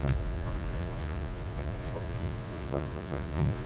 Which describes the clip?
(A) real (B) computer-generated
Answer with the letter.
B